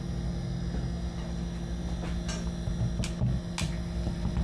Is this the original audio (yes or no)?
yes